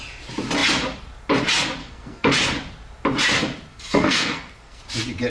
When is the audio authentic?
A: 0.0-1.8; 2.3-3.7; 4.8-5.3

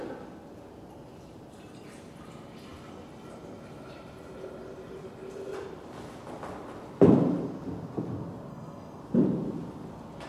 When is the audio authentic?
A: 0.0-8.5; 9.0-10.3